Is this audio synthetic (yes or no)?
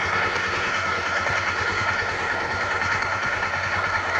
yes